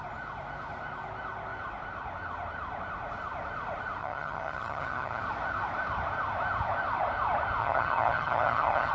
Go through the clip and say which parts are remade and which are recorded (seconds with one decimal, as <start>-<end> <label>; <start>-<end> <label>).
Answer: 0.0-4.0 recorded; 4.0-5.2 remade; 5.2-7.6 recorded; 7.6-8.9 remade